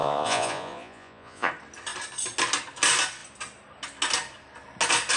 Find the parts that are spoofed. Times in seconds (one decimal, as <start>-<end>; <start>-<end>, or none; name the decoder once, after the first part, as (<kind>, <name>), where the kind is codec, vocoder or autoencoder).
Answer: 0.0-1.5 (vocoder, Vocos)